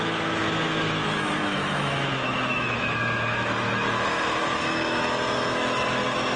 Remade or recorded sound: remade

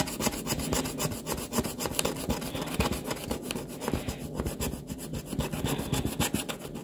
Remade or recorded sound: recorded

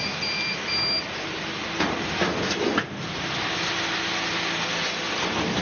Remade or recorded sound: recorded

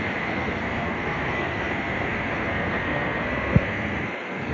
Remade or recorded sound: remade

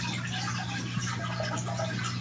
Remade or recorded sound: recorded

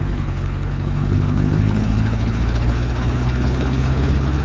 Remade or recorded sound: remade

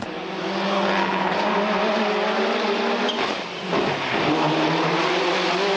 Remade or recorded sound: recorded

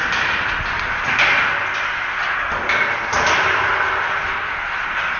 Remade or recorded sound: recorded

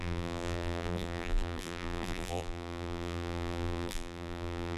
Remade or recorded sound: remade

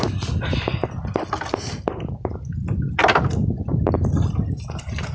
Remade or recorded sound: recorded